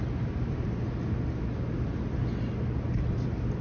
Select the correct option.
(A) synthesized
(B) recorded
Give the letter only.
B